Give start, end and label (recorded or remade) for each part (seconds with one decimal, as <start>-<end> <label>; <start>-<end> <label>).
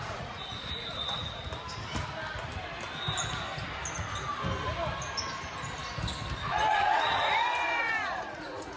0.0-1.4 remade; 1.4-6.4 recorded; 6.4-8.8 remade